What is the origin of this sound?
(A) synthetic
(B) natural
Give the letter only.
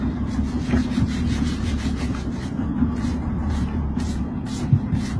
B